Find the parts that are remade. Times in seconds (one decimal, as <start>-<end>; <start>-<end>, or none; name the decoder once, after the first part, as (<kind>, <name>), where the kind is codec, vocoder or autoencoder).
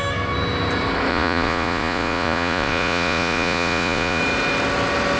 1.1-4.2 (vocoder, Vocos)